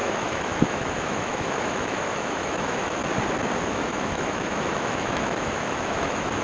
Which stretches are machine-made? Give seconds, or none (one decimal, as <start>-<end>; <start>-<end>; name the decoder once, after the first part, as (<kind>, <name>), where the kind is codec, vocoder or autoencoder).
0.0-3.0 (autoencoder, DAC-VAE); 3.6-6.4